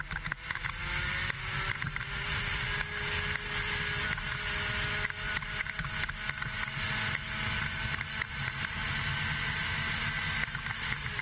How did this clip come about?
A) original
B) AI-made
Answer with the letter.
A